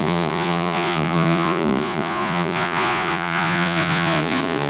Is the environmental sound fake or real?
fake